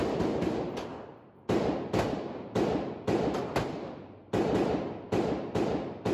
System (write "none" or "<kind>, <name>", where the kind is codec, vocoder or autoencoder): none